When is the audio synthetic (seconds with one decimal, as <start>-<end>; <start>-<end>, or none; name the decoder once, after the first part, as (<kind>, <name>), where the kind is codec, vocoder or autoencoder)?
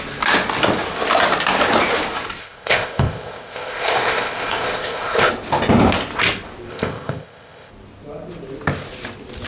2.4-5.3 (codec, ZipCodec); 6.7-7.7